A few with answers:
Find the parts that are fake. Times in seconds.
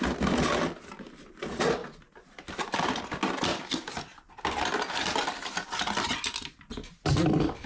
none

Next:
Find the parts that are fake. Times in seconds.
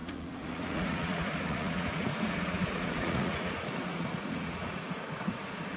0.0-5.8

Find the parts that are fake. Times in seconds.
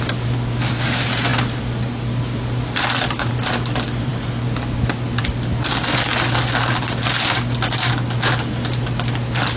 none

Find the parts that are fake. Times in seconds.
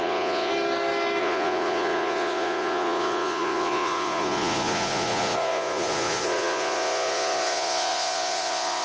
0.0-0.5; 1.2-8.8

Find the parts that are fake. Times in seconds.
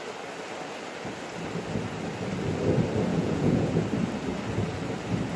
3.1-3.8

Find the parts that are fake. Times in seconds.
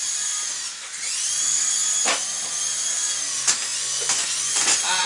3.7-5.1